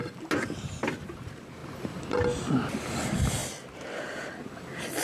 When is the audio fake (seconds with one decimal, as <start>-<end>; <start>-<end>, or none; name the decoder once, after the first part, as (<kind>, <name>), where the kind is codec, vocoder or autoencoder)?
none